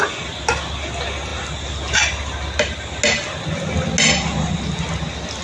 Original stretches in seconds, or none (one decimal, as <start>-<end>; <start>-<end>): 0.0-5.4